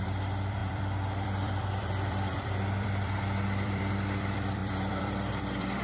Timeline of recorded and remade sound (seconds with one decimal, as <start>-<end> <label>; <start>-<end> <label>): 0.0-5.8 remade